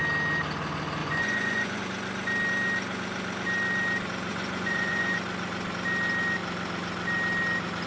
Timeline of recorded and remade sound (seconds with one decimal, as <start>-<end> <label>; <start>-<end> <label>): 0.0-1.0 recorded; 1.0-1.8 remade; 1.8-4.3 recorded; 4.3-5.2 remade; 5.2-7.9 recorded